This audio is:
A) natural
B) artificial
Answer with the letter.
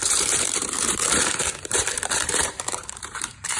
B